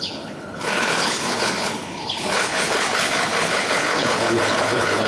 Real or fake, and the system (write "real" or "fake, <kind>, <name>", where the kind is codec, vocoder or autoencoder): fake, codec, HILCodec